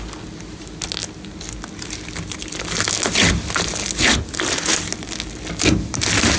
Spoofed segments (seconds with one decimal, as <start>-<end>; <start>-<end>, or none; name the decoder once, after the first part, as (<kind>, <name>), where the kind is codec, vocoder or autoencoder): none